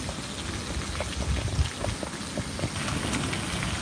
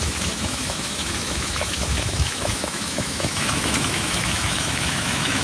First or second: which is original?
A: first